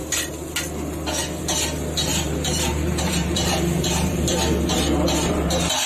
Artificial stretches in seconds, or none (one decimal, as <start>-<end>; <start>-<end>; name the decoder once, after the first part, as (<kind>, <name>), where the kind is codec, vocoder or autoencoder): 2.1-5.9 (vocoder, BigVGAN v2)